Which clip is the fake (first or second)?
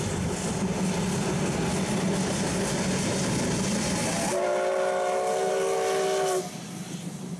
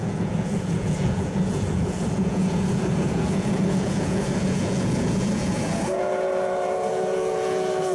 second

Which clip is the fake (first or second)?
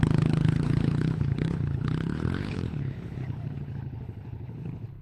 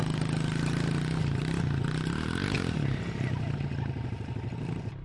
first